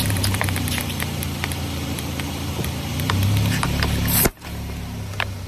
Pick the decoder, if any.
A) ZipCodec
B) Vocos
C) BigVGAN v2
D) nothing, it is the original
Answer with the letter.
C